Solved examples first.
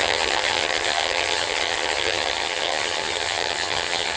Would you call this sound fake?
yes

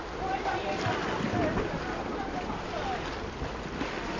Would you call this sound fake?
no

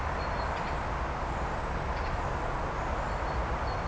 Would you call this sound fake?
no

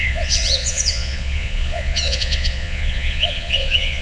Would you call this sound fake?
yes